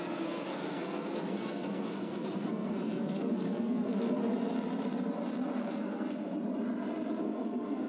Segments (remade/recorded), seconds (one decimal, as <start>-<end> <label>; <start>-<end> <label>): 0.0-4.2 remade; 4.2-5.6 recorded; 5.6-6.3 remade; 6.3-7.2 recorded; 7.2-7.9 remade